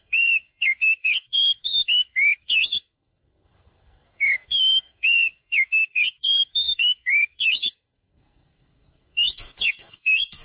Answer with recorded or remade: remade